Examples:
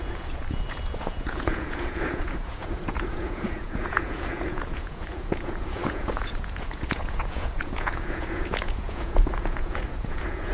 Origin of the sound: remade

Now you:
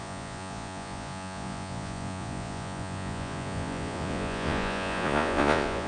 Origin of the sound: remade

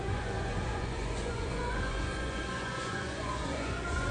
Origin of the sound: remade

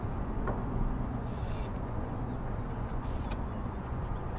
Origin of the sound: remade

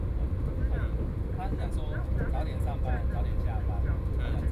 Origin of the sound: recorded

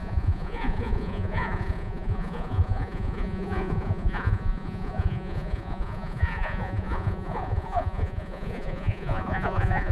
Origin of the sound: remade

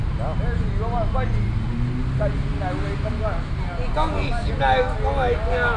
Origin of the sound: recorded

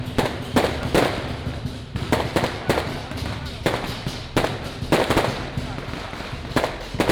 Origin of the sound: recorded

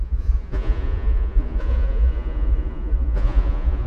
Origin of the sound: remade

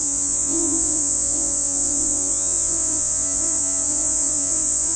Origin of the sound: remade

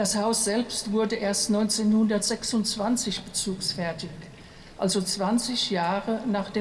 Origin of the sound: recorded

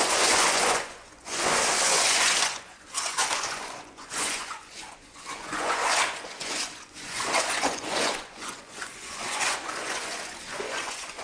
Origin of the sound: remade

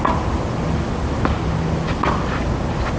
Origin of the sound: recorded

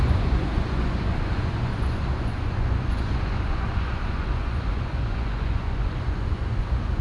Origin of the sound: remade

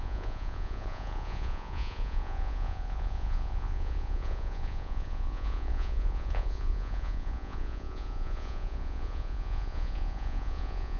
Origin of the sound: remade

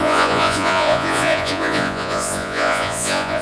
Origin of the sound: remade